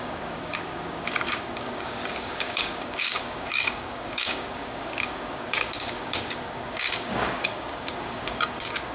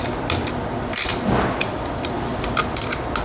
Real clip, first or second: second